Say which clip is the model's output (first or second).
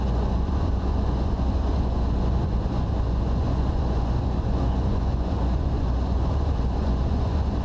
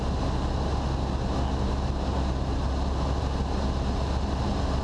first